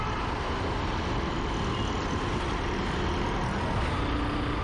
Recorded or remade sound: recorded